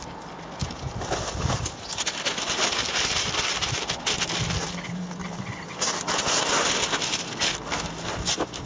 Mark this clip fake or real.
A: real